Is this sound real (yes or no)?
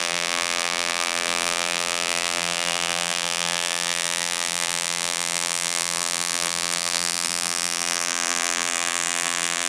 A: no